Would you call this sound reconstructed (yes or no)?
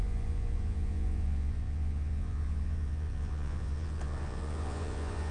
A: yes